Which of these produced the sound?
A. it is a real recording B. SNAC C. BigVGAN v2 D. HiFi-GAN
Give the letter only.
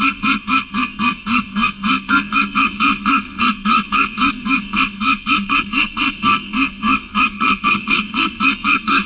B